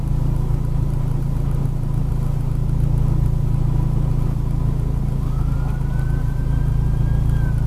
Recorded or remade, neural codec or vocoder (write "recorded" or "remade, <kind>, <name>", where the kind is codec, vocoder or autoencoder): recorded